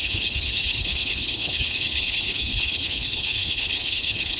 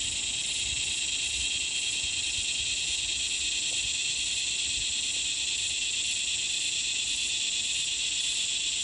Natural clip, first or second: second